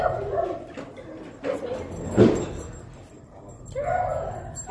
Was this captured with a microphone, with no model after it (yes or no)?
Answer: yes